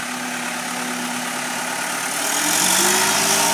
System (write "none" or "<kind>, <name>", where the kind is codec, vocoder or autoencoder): none